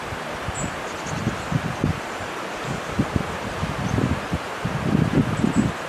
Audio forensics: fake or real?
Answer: fake